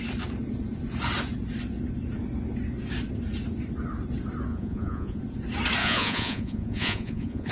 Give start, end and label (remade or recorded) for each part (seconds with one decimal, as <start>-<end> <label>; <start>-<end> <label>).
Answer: 0.0-4.5 recorded; 4.5-5.2 remade; 5.2-5.8 recorded; 5.8-7.5 remade